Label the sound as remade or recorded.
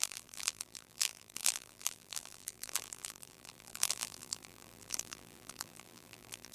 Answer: remade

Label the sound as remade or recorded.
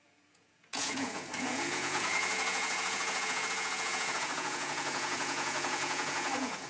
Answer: remade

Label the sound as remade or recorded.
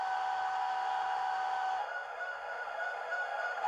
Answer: remade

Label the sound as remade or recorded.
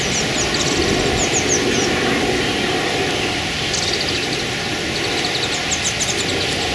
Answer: recorded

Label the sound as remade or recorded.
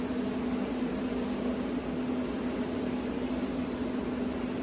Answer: recorded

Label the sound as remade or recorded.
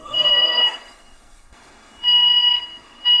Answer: remade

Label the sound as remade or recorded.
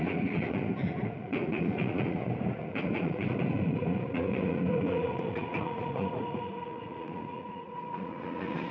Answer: remade